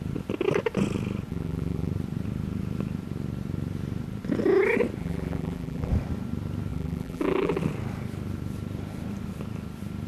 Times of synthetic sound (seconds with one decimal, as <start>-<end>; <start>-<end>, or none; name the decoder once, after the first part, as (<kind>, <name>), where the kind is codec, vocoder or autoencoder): 1.3-1.9 (vocoder, BigVGAN v2); 5.0-5.9; 6.7-7.6